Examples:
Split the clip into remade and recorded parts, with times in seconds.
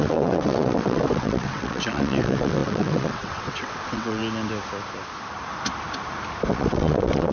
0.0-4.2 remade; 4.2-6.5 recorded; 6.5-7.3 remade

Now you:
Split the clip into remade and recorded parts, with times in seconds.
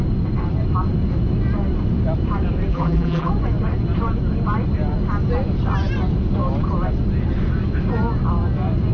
0.0-2.7 recorded; 2.7-3.3 remade; 3.3-8.9 recorded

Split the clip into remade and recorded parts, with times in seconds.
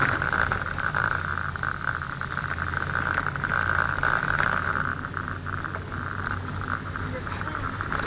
0.0-1.3 remade; 1.3-4.5 recorded; 4.5-4.9 remade; 4.9-6.8 recorded; 6.8-8.1 remade